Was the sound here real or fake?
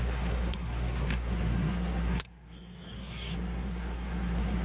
fake